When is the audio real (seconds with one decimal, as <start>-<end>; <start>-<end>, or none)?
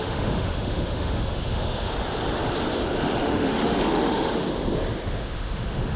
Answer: 1.9-3.2; 4.4-5.1